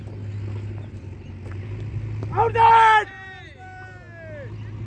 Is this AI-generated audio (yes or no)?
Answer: no